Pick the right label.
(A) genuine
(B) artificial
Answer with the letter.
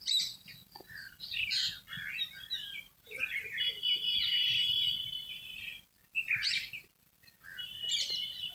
B